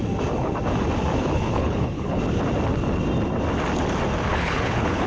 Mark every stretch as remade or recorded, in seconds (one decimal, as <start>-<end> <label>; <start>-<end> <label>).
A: 0.0-1.2 recorded; 1.2-2.2 remade; 2.2-4.3 recorded; 4.3-5.1 remade